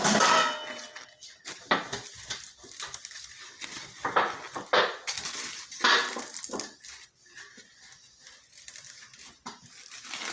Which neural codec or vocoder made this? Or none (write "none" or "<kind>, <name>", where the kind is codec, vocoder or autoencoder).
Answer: none